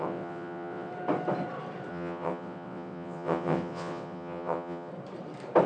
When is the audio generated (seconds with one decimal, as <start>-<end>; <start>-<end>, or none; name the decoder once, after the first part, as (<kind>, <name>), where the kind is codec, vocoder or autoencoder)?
0.0-0.9 (vocoder, WaveNeXt); 1.9-4.9